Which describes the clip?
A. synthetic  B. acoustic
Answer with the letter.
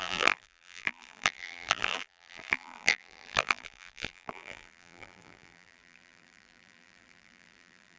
A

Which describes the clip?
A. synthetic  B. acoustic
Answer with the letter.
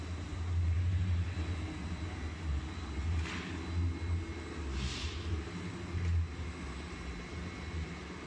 B